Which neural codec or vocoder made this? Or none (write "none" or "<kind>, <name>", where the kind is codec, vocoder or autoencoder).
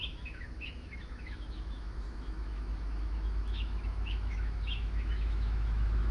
autoencoder, DAC-VAE